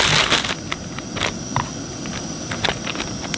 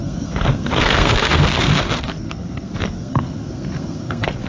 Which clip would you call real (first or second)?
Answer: first